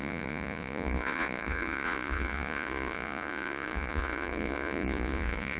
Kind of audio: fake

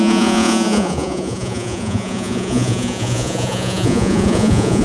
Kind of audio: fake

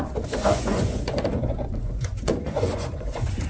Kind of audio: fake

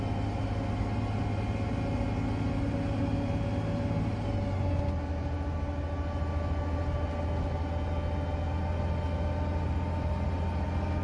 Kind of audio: real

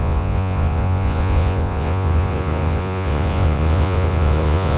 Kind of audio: fake